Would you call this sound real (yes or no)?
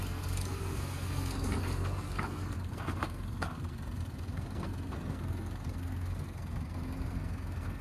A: no